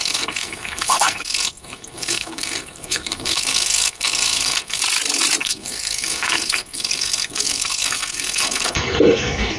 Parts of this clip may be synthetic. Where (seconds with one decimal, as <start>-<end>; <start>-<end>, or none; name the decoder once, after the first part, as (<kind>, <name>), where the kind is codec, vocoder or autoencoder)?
0.0-4.8 (codec, SNAC); 5.4-9.6